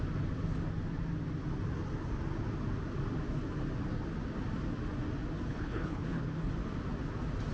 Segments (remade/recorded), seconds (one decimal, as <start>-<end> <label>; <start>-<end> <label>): 0.0-5.5 recorded; 5.5-6.5 remade; 6.5-7.5 recorded